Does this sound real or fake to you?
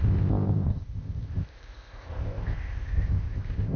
fake